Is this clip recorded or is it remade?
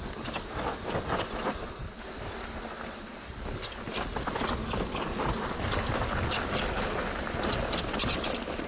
recorded